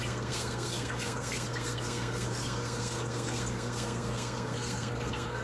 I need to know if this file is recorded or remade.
remade